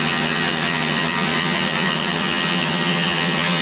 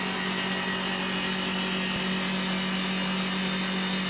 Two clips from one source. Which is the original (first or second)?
second